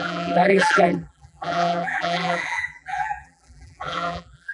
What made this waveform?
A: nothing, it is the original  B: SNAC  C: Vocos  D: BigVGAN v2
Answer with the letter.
D